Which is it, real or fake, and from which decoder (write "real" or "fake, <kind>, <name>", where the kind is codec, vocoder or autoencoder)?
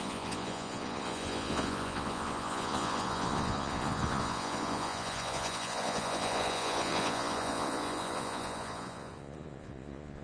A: fake, vocoder, Vocos